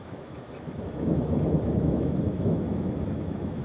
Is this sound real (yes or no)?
no